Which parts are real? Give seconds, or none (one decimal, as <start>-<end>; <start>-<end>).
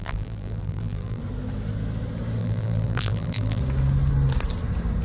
1.2-2.4; 3.6-5.0